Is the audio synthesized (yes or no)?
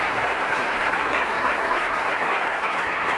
yes